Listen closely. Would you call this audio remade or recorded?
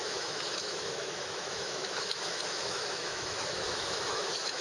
remade